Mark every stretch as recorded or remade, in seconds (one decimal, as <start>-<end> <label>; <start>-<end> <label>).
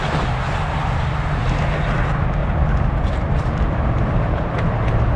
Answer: 0.0-2.4 recorded; 2.4-4.0 remade; 4.0-5.2 recorded